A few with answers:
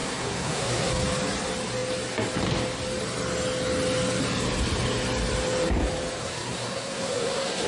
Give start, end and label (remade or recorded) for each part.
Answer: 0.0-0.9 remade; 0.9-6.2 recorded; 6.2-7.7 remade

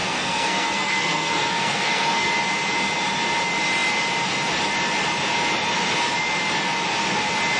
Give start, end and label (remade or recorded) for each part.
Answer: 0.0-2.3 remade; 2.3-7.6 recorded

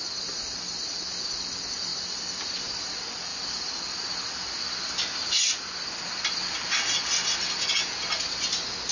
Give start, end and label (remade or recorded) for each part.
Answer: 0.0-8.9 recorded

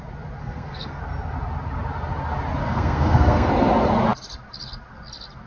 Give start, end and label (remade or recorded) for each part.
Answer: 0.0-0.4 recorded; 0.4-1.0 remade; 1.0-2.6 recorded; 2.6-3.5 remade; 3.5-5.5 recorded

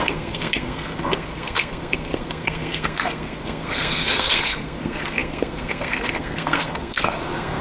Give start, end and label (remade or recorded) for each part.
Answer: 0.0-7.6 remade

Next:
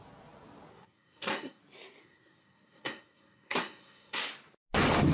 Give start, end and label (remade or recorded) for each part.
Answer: 0.0-0.7 recorded; 0.7-1.6 remade; 1.6-2.0 recorded; 2.0-4.2 remade; 4.2-5.1 recorded

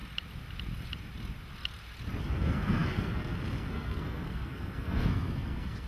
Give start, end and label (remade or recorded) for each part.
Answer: 0.0-2.2 recorded; 2.2-5.9 remade